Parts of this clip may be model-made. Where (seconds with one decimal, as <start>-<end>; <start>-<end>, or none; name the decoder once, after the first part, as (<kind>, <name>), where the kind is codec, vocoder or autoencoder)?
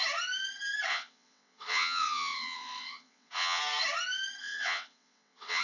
0.9-3.6 (vocoder, WaveNeXt); 4.4-5.6